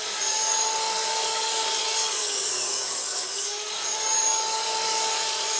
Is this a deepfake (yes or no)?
yes